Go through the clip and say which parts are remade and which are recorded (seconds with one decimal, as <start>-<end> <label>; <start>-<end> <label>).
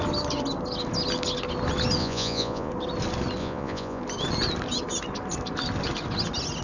0.0-2.0 recorded; 2.0-2.7 remade; 2.7-3.4 recorded; 3.4-4.0 remade; 4.0-6.6 recorded